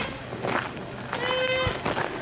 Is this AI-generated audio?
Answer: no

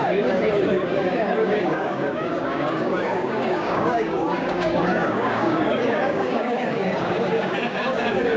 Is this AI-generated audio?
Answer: yes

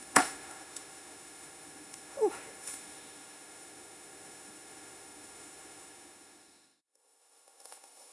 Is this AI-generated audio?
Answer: yes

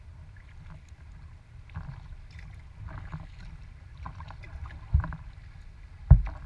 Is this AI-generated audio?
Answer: no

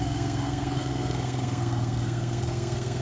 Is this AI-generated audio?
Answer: yes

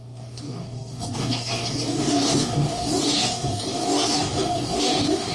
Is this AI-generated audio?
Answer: yes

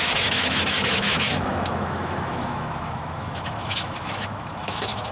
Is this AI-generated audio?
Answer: yes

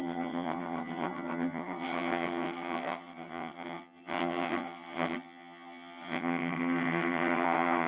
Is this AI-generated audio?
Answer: yes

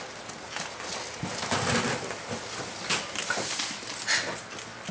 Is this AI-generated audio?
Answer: no